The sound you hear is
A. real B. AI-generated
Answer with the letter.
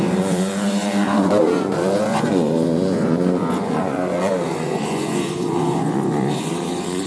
B